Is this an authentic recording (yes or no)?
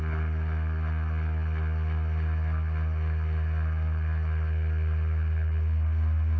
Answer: yes